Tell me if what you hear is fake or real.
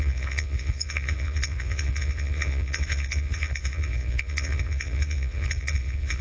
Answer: fake